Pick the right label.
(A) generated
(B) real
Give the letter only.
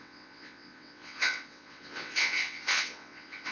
A